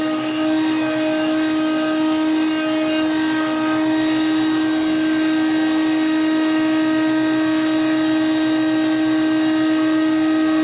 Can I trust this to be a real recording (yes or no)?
yes